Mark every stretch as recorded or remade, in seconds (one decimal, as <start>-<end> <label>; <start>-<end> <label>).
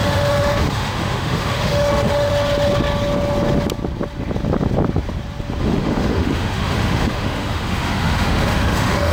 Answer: 0.0-2.3 remade; 2.3-5.6 recorded; 5.6-9.1 remade